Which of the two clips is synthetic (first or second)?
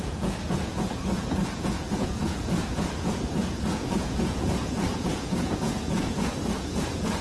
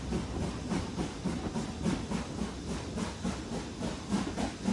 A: first